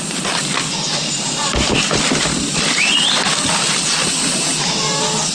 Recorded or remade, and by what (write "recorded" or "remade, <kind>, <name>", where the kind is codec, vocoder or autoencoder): recorded